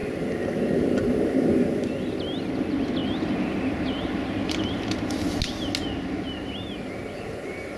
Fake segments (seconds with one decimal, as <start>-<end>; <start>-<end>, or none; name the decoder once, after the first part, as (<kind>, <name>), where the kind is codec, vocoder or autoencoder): none